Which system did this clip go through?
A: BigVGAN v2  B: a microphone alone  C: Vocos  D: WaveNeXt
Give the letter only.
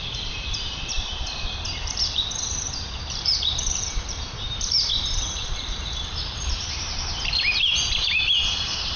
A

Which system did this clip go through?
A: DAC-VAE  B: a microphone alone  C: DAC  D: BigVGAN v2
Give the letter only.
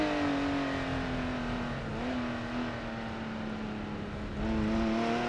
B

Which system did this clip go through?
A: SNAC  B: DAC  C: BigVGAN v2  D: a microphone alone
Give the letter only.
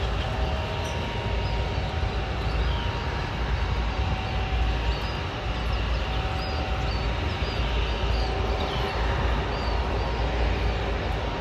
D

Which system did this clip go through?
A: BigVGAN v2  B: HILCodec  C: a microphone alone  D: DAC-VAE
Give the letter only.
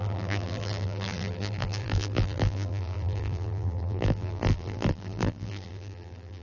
A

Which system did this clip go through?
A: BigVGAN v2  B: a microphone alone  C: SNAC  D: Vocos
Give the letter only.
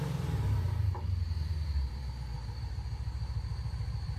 A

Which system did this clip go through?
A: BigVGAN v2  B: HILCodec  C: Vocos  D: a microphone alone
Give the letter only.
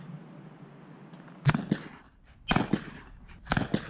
D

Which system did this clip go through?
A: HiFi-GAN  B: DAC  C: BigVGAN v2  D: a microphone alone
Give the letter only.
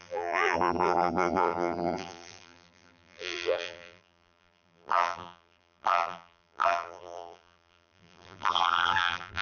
C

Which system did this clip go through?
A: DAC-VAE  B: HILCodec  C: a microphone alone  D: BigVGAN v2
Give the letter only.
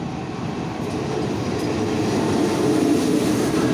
C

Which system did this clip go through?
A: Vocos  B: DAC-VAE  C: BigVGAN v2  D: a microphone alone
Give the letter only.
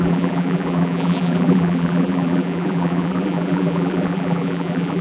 C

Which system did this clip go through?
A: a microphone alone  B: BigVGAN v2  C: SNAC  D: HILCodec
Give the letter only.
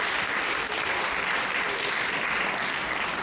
B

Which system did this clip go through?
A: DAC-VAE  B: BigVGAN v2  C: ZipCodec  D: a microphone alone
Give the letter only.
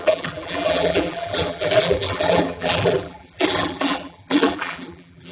B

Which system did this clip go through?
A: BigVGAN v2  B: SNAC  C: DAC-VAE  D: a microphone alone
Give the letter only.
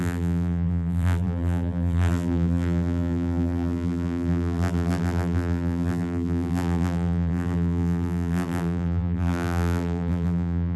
A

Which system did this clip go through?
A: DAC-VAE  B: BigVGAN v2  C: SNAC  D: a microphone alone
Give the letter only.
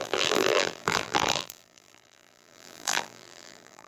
B